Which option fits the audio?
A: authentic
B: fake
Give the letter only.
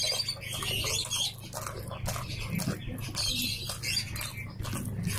A